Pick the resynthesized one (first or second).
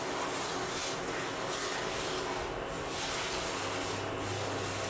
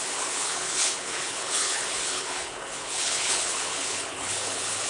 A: second